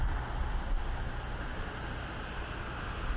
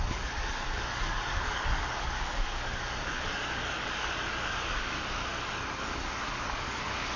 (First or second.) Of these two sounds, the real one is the first